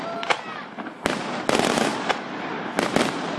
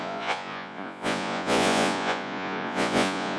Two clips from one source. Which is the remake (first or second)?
second